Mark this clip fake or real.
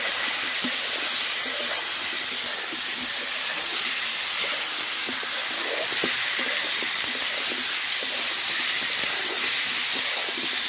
real